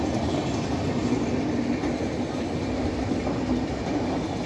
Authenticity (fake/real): real